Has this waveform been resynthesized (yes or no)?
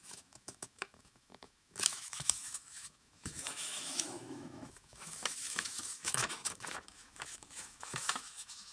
yes